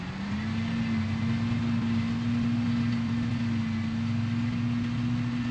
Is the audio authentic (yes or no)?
yes